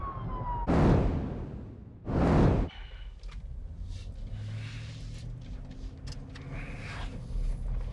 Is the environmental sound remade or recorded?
recorded